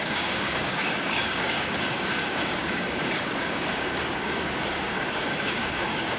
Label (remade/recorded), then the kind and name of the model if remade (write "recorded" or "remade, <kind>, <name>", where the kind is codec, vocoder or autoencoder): remade, codec, DAC